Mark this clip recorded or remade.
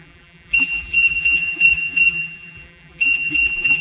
remade